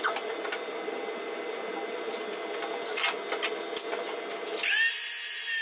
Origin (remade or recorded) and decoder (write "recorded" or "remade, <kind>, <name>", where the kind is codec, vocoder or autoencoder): recorded